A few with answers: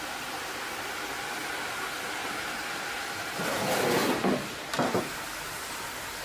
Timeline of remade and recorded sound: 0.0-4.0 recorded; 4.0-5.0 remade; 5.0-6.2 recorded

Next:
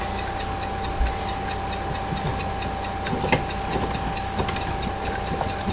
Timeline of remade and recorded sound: 0.0-5.7 recorded

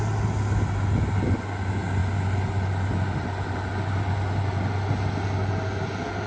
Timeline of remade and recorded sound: 0.0-6.3 recorded

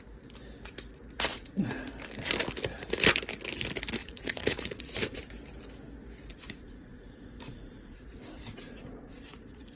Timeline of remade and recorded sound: 0.0-1.3 recorded; 1.3-1.9 remade; 1.9-4.0 recorded; 4.0-5.2 remade; 5.2-6.3 recorded; 6.3-9.8 remade

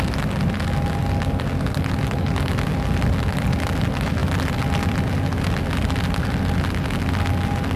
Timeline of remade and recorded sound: 0.0-7.8 recorded

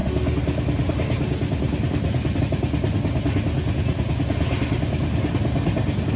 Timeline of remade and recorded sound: 0.0-6.2 recorded